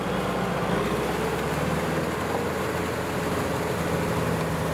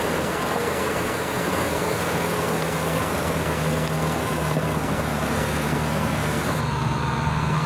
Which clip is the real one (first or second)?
first